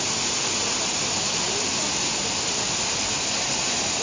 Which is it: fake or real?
real